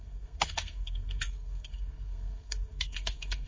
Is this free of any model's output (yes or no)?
no